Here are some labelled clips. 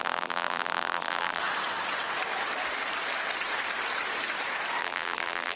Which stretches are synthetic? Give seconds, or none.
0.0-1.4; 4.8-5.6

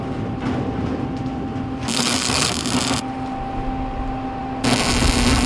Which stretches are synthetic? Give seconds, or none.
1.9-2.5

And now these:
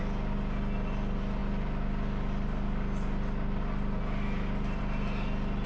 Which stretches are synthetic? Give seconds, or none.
none

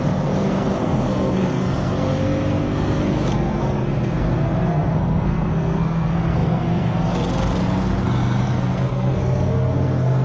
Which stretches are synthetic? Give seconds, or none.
0.0-10.2

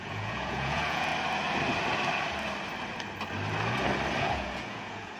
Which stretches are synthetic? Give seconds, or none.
0.0-1.1; 4.2-5.2

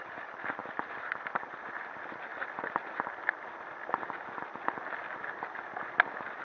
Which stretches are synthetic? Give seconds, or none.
none

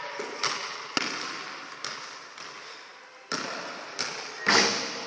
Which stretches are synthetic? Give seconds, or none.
none